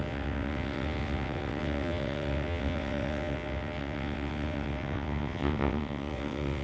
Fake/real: fake